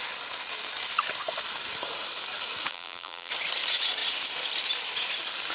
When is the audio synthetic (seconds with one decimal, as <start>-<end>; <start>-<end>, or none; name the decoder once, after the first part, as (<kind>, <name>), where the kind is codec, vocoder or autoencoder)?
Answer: 2.7-3.3 (vocoder, BigVGAN v2)